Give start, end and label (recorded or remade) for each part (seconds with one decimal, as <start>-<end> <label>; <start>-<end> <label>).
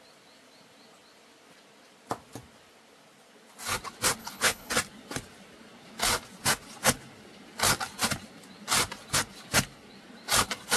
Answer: 0.0-4.2 recorded; 4.2-4.7 remade; 4.7-10.8 recorded